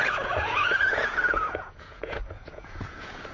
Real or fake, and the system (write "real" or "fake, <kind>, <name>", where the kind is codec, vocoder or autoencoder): fake, vocoder, Vocos